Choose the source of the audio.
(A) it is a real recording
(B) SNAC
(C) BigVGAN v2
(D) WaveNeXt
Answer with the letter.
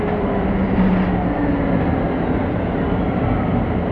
A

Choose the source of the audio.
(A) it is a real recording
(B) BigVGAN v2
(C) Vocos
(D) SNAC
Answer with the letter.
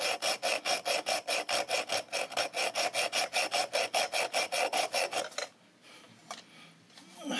A